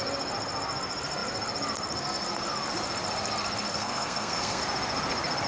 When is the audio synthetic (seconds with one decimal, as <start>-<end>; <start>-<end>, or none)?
3.7-4.6